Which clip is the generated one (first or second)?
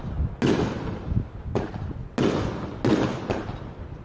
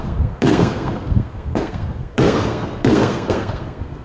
second